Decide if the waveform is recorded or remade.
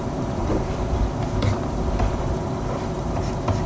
remade